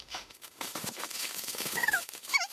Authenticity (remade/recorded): remade